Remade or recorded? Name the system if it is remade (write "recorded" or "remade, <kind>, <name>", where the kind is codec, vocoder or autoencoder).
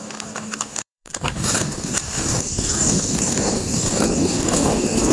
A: remade, codec, DAC